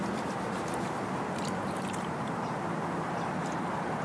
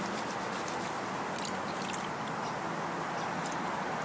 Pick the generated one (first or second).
first